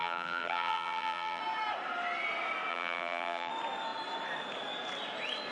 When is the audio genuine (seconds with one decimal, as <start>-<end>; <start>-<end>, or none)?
1.4-2.7; 3.5-5.5